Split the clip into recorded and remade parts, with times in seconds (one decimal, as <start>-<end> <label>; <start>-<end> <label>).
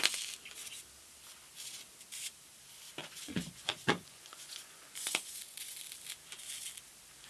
0.0-3.0 recorded; 3.0-5.8 remade; 5.8-7.3 recorded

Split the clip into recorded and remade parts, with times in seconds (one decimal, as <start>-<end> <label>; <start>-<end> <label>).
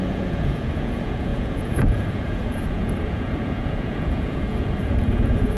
0.0-5.6 remade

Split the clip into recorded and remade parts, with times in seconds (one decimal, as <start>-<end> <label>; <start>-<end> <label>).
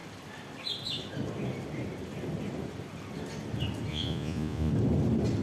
0.0-3.9 recorded; 3.9-4.7 remade; 4.7-5.4 recorded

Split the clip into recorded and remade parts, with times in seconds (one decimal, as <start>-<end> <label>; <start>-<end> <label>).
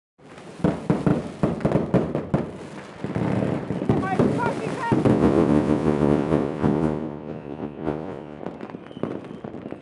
0.0-5.1 recorded; 5.1-8.4 remade; 8.4-9.8 recorded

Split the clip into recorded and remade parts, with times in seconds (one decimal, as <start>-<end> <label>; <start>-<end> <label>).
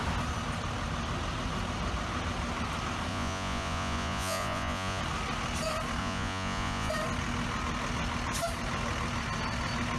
0.0-3.1 recorded; 3.1-5.0 remade; 5.0-6.0 recorded; 6.0-6.9 remade; 6.9-10.0 recorded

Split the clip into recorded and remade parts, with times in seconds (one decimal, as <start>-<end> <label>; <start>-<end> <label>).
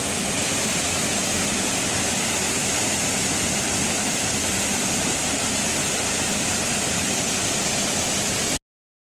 0.0-9.1 recorded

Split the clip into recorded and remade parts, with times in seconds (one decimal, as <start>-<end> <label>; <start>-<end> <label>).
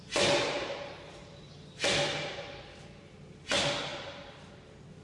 0.0-5.0 recorded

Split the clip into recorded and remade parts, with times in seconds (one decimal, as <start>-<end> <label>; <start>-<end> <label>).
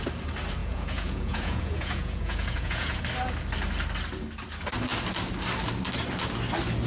0.0-0.6 recorded; 0.6-3.0 remade; 3.0-6.9 recorded